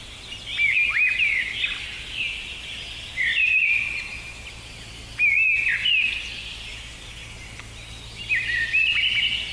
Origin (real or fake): real